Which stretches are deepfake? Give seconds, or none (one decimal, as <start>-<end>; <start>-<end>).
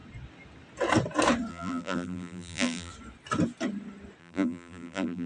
1.5-2.9; 4.2-5.3